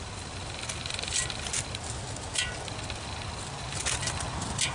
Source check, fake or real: real